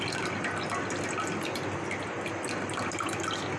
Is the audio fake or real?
real